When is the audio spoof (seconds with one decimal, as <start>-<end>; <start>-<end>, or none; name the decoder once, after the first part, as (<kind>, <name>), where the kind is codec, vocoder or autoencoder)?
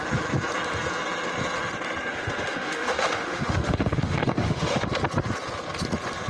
2.1-4.9 (autoencoder, DAC-VAE)